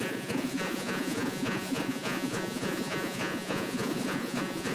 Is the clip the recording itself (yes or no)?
no